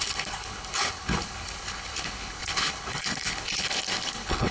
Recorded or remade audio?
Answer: remade